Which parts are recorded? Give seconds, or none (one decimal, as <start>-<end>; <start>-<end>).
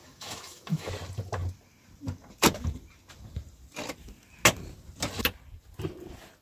0.9-6.4